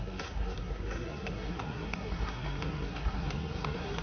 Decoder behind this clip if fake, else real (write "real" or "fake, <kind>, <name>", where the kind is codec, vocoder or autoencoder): fake, codec, SNAC